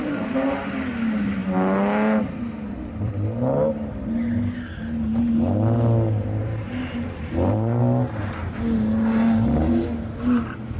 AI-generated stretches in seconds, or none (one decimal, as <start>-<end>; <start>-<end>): 6.4-7.8